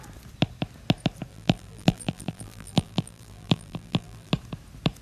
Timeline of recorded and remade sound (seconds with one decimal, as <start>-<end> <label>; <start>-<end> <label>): 0.0-1.3 recorded; 1.3-4.3 remade; 4.3-5.0 recorded